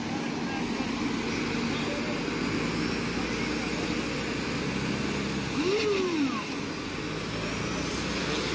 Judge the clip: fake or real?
real